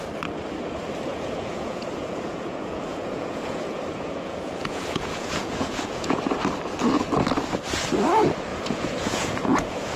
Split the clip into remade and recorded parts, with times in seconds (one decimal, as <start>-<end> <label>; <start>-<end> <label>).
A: 0.0-1.1 recorded; 1.1-6.2 remade; 6.2-8.5 recorded; 8.5-10.0 remade